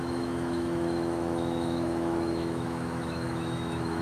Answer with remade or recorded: remade